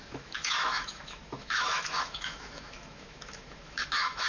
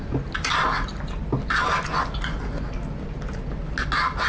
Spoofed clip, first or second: first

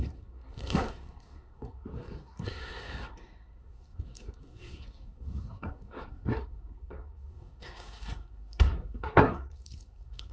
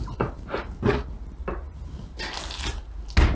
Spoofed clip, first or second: first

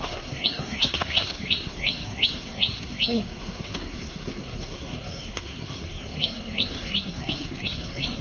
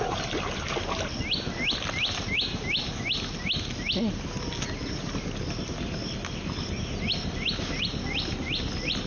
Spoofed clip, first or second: first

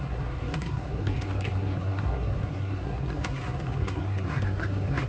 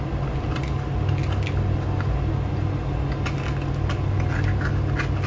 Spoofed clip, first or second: first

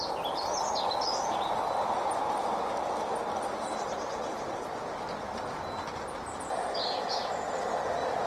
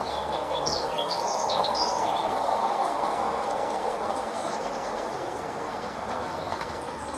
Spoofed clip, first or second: second